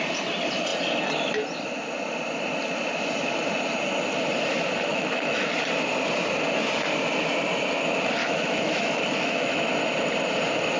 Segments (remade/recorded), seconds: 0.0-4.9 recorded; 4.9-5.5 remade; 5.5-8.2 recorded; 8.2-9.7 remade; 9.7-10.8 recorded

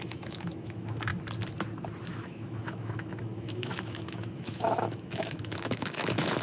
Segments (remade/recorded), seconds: 0.0-1.1 remade; 1.1-2.1 recorded; 2.1-6.4 remade

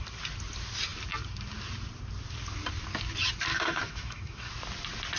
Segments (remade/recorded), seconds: 0.0-3.5 recorded; 3.5-4.5 remade; 4.5-5.2 recorded

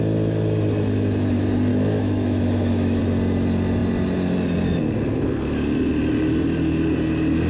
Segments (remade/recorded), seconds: 0.0-1.7 recorded; 1.7-3.0 remade; 3.0-7.5 recorded